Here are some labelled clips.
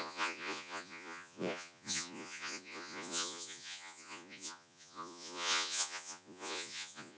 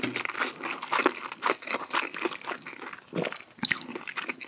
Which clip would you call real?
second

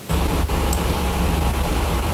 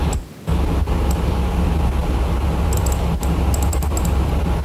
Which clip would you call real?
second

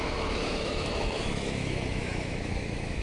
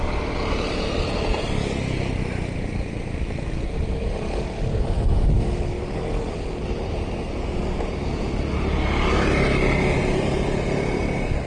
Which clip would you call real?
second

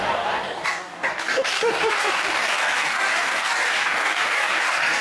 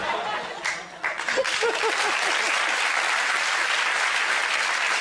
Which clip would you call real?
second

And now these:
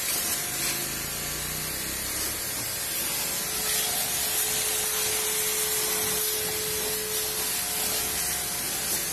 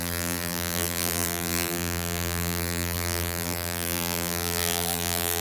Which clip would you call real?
first